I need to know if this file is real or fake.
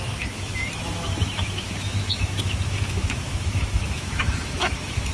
fake